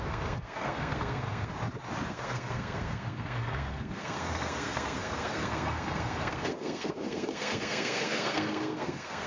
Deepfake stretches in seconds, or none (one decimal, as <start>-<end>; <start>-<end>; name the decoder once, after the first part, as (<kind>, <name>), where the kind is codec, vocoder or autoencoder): 0.0-1.5 (codec, SNAC); 2.1-9.3